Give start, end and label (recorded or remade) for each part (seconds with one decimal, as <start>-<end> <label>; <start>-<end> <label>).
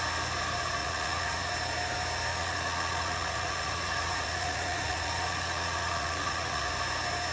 0.0-0.8 recorded; 0.8-1.5 remade; 1.5-2.3 recorded; 2.3-6.7 remade; 6.7-7.3 recorded